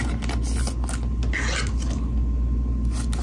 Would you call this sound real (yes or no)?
yes